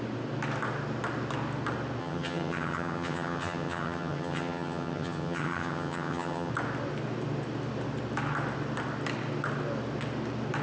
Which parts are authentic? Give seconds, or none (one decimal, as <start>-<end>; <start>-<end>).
0.0-2.0; 6.5-10.6